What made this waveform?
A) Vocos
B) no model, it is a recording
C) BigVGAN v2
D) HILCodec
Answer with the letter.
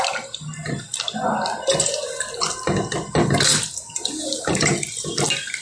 B